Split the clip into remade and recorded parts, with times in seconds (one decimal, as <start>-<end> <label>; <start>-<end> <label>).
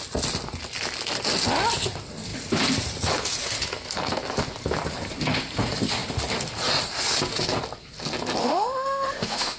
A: 0.0-8.4 recorded; 8.4-9.6 remade